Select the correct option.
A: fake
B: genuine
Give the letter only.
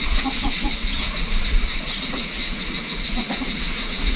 A